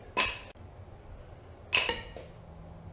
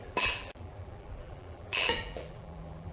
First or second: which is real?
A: first